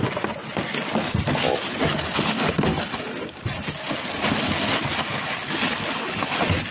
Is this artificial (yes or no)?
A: no